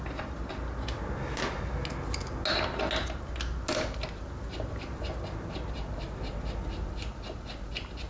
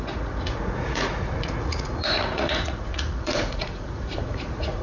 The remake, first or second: second